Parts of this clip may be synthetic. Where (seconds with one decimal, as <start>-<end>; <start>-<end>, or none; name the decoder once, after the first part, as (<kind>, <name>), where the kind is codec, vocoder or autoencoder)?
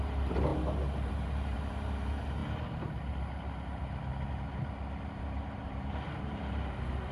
0.0-0.5 (vocoder, BigVGAN v2); 1.1-2.4; 5.2-7.1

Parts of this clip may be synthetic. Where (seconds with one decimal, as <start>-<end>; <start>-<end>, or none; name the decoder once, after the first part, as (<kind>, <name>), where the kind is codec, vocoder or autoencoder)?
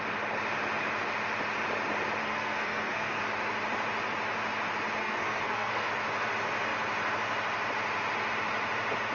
2.2-3.2 (codec, SNAC); 5.0-5.9